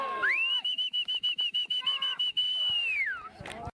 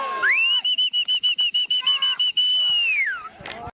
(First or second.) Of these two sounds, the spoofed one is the first